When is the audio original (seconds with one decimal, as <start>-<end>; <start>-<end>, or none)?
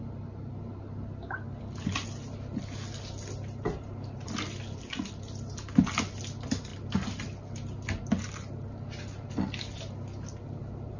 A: 0.0-11.0